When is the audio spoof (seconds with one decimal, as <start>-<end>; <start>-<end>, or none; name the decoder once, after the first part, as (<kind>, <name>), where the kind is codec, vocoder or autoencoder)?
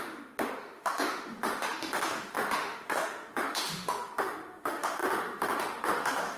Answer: 0.0-6.4 (autoencoder, DAC-VAE)